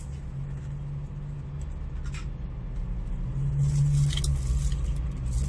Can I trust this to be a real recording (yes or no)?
yes